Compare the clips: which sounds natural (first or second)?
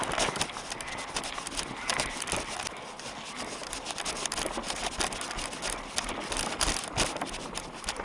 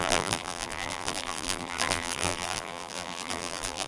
first